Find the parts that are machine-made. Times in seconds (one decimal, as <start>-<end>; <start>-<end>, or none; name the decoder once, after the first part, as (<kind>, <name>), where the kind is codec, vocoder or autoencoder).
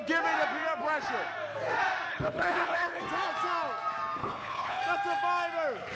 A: 2.1-3.0 (codec, HILCodec); 4.2-4.8